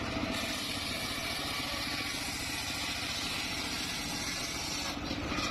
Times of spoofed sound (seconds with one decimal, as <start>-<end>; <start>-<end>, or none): none